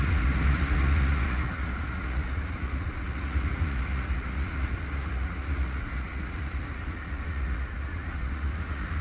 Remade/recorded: remade